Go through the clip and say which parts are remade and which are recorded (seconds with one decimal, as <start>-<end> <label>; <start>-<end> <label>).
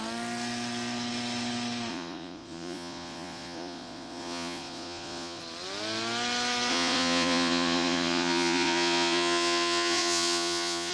0.0-1.9 recorded; 1.9-5.4 remade; 5.4-6.7 recorded; 6.7-10.9 remade